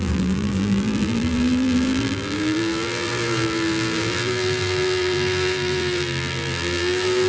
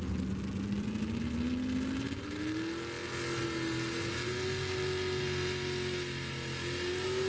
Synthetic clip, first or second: first